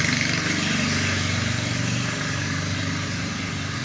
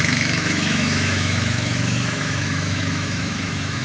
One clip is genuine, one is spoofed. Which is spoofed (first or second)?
second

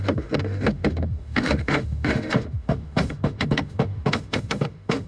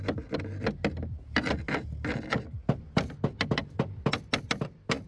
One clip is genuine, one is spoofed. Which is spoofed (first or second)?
first